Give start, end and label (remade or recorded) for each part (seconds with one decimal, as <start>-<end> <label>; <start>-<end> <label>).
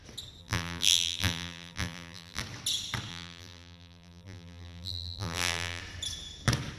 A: 0.0-0.4 recorded; 0.4-2.4 remade; 2.4-3.1 recorded; 3.1-5.8 remade; 5.8-6.8 recorded